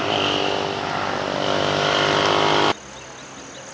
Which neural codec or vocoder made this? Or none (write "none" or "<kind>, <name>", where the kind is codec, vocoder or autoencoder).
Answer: none